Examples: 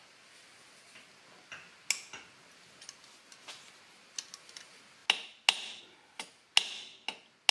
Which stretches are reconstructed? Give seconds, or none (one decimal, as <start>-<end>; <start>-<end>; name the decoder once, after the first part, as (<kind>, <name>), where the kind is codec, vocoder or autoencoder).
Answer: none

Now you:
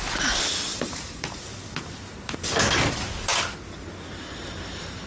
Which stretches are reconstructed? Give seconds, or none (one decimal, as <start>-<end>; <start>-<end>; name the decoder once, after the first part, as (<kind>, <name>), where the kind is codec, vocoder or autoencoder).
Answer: 0.0-1.5 (vocoder, BigVGAN v2); 2.9-3.3; 4.1-5.1

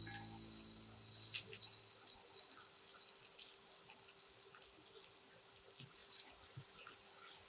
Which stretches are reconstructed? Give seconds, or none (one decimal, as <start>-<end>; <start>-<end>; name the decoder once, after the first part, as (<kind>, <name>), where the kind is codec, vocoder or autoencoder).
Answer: 6.0-7.0 (vocoder, BigVGAN v2)

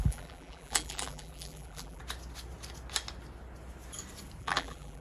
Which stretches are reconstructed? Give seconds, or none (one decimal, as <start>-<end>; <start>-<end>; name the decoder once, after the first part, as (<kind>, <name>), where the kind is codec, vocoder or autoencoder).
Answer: 0.0-2.0 (vocoder, BigVGAN v2); 4.4-5.0

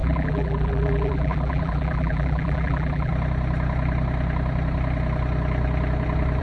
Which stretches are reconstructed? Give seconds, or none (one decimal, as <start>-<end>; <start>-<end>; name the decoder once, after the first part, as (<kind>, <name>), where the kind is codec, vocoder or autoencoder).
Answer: 0.0-3.1 (vocoder, BigVGAN v2)